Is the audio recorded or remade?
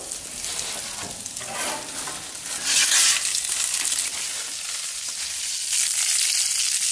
recorded